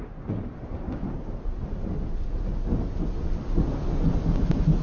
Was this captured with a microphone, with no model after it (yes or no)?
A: yes